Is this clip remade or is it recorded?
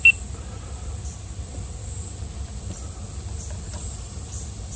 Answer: remade